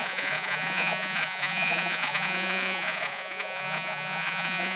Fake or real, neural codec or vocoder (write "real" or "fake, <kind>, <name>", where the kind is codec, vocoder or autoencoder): fake, vocoder, Vocos